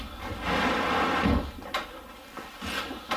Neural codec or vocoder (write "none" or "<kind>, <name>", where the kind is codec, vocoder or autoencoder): none